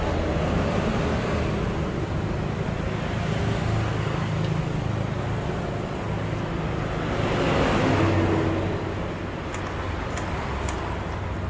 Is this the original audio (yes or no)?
yes